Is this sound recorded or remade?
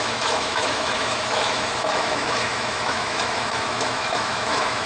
remade